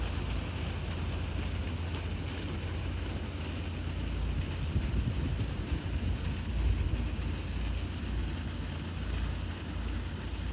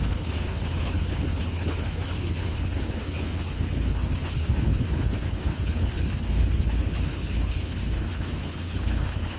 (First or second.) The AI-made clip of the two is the second